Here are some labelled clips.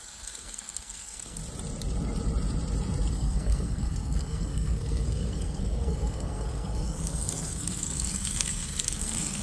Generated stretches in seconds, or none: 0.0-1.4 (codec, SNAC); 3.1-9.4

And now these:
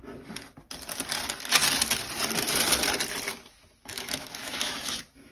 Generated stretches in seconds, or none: 3.3-5.3 (autoencoder, DAC-VAE)

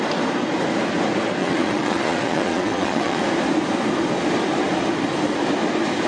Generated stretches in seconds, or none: 1.4-3.2 (vocoder, Vocos)

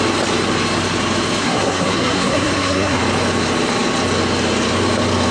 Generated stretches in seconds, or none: 1.4-3.0 (codec, SNAC)

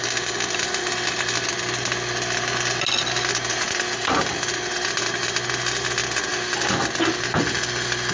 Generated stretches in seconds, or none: none

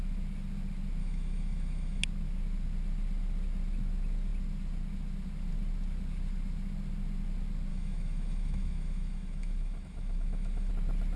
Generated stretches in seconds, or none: 1.0-2.0 (autoencoder, DAC-VAE); 7.7-10.7